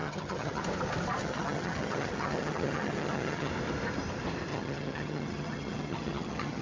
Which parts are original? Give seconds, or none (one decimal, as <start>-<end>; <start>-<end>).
0.6-1.2; 3.5-4.5